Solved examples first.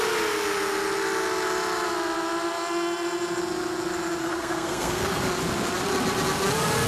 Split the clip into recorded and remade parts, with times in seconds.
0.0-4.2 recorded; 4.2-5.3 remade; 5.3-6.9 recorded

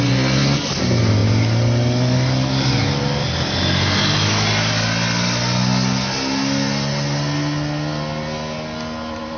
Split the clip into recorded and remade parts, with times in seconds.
0.0-9.4 recorded

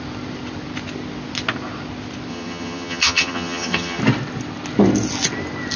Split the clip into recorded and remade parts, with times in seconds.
0.0-2.3 recorded; 2.3-4.0 remade; 4.0-5.8 recorded

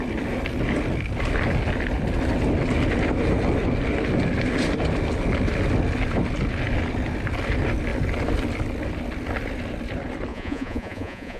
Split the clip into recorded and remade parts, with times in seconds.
0.0-10.3 recorded; 10.3-11.4 remade